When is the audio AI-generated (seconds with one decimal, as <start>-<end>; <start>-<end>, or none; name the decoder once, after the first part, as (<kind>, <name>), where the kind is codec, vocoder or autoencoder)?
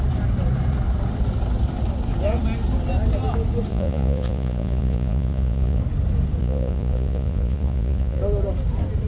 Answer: 3.7-5.8 (vocoder, Vocos); 6.4-8.2